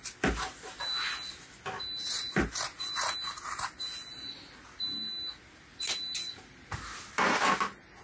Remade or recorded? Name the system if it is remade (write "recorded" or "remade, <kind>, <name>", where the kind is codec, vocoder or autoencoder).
recorded